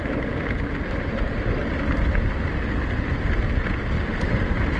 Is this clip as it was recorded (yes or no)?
yes